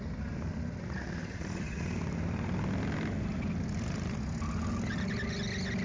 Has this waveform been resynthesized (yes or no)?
no